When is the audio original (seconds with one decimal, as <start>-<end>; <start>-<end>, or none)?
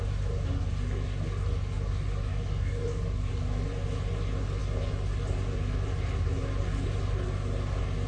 0.0-2.3; 3.3-8.1